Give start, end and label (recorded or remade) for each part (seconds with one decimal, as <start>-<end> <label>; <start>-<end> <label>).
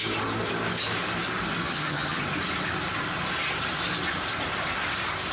0.0-1.6 recorded; 1.6-2.2 remade; 2.2-5.3 recorded